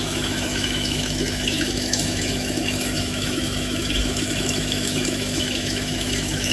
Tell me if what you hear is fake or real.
fake